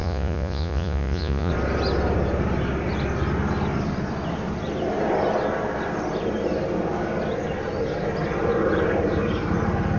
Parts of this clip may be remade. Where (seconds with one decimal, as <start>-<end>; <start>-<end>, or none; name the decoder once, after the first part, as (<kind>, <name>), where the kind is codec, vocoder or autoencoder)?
0.0-1.5 (vocoder, Vocos)